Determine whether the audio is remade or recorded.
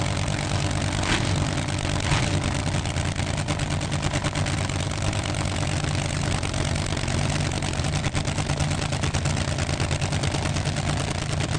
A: recorded